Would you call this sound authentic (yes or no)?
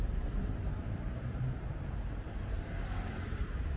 no